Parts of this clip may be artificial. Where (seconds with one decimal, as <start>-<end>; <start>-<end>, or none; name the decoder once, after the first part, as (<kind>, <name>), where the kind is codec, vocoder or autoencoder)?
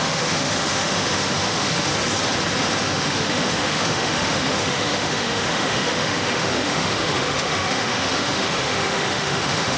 0.0-1.9 (autoencoder, DAC-VAE); 2.8-9.8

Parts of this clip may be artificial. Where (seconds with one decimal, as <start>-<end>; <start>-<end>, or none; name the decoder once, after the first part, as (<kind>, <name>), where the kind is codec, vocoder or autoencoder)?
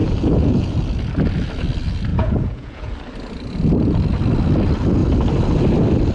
0.0-0.8 (vocoder, Vocos); 2.1-2.9